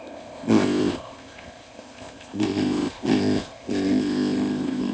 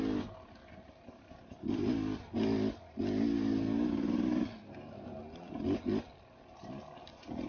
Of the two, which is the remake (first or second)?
first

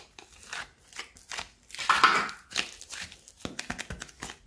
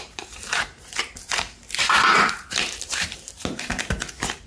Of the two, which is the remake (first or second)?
second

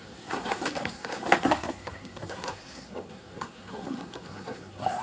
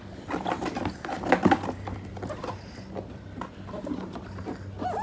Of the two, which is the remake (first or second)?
first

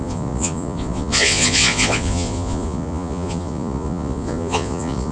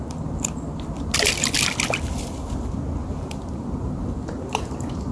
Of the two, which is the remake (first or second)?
first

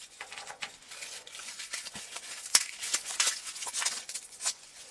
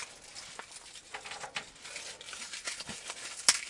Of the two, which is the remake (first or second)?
first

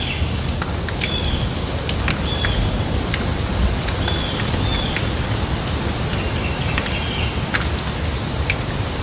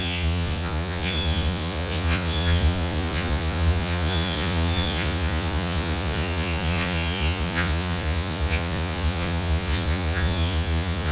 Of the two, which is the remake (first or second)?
second